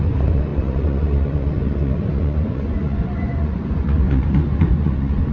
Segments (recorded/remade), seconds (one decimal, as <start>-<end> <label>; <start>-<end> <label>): 0.0-5.3 remade